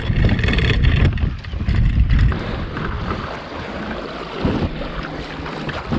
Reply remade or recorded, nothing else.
recorded